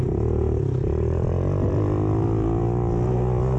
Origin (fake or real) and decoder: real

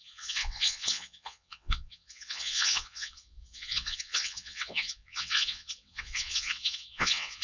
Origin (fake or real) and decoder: fake, vocoder, WaveNeXt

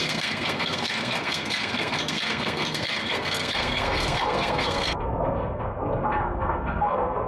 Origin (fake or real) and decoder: fake, codec, SNAC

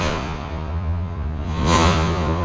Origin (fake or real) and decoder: fake, vocoder, Vocos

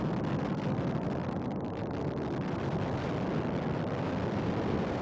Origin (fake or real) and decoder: fake, vocoder, BigVGAN v2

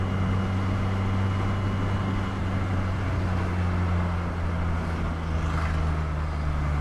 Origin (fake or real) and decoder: real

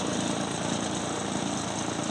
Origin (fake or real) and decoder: real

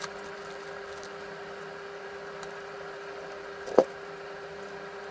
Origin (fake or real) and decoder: fake, vocoder, BigVGAN v2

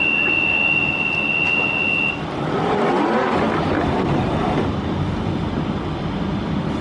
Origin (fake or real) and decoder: real